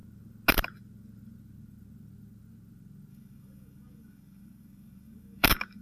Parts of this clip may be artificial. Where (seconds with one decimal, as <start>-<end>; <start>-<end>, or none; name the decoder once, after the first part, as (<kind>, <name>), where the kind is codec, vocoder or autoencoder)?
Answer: 3.1-5.8 (codec, DAC)